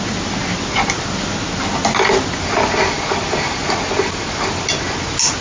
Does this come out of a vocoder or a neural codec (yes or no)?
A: no